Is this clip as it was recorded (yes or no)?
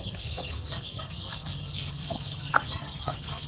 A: no